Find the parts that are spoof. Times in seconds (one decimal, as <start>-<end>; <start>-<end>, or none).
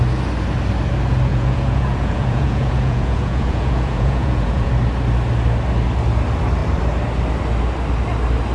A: 1.3-4.7